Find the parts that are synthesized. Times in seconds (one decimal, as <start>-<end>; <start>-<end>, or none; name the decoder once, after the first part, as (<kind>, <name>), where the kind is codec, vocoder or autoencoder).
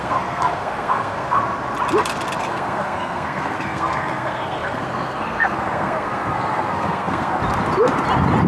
0.0-1.4 (codec, SNAC); 2.4-7.4